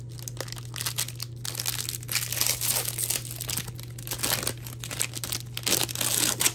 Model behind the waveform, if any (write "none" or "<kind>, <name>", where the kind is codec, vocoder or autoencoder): none